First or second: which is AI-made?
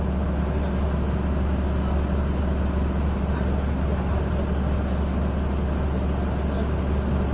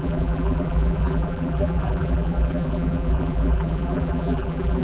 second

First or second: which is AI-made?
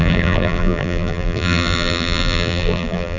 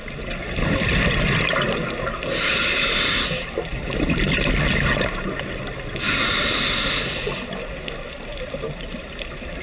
first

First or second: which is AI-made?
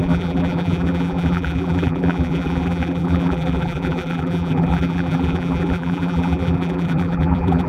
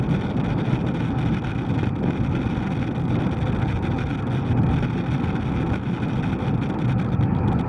first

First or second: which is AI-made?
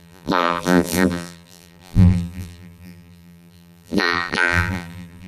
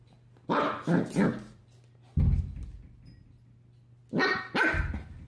first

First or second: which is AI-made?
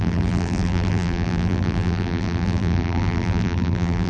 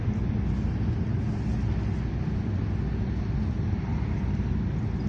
first